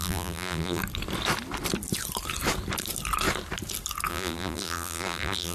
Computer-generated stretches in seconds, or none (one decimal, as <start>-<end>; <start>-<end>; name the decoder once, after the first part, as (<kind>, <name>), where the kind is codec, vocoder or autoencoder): 0.0-0.8 (vocoder, BigVGAN v2); 4.1-5.5